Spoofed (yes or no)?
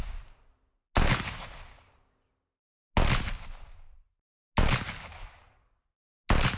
no